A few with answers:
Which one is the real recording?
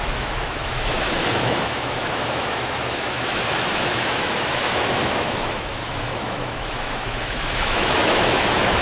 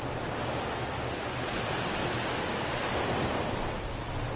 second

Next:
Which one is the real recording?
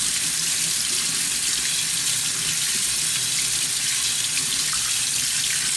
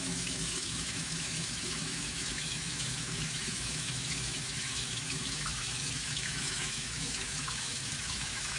first